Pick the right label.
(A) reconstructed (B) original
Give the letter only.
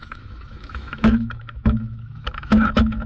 A